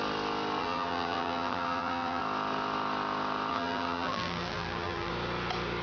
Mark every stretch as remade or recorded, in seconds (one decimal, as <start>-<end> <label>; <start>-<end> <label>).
0.0-0.6 recorded; 0.6-2.2 remade; 2.2-3.5 recorded; 3.5-5.1 remade; 5.1-5.8 recorded